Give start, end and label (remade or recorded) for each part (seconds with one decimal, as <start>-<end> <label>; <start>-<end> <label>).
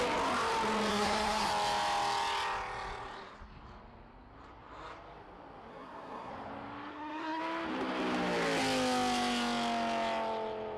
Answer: 0.0-0.9 recorded; 0.9-1.5 remade; 1.5-5.7 recorded; 5.7-6.3 remade; 6.3-6.9 recorded; 6.9-7.4 remade; 7.4-10.8 recorded